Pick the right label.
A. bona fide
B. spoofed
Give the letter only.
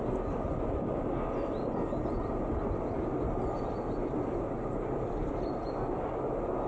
A